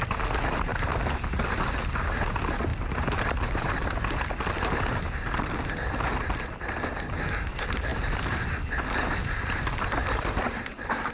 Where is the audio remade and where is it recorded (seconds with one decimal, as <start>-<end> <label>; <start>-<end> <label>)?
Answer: 0.0-2.7 recorded; 2.7-4.1 remade; 4.1-11.1 recorded